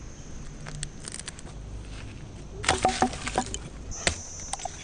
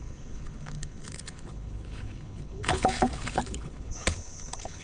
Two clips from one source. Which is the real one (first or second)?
first